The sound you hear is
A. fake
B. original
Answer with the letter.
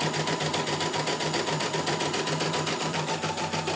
A